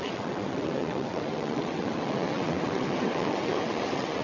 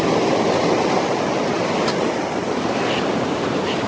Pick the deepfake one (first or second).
first